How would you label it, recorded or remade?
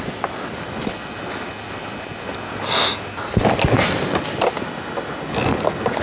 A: recorded